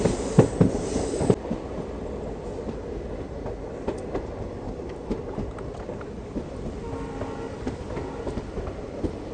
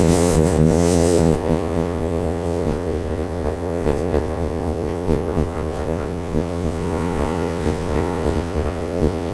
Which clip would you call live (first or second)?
first